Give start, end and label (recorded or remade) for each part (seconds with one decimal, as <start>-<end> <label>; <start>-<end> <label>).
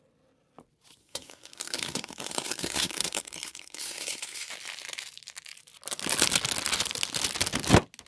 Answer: 0.0-1.0 recorded; 1.0-4.5 remade; 4.5-8.1 recorded